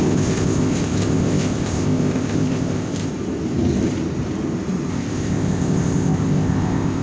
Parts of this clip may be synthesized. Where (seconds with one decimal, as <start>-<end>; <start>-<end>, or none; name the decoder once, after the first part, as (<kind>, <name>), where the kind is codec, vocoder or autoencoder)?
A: 0.0-3.1 (codec, ZipCodec); 4.9-7.0